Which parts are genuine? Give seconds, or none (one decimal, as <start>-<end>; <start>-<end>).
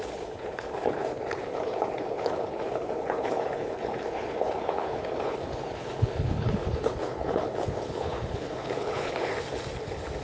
9.3-10.2